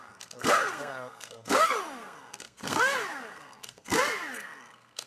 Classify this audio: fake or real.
fake